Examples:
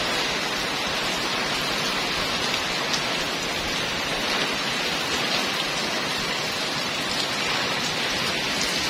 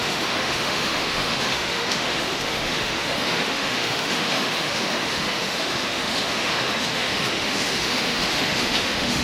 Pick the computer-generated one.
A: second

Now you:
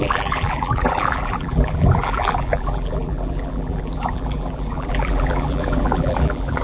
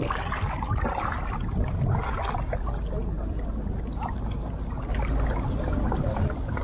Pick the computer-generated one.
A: first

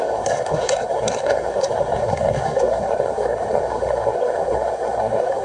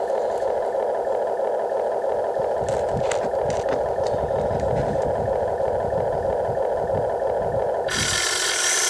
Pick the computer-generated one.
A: first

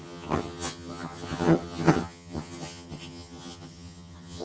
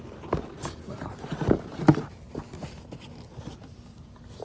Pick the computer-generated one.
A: first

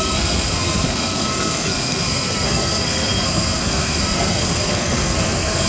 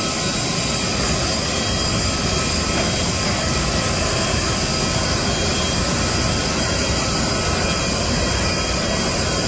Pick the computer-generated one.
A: first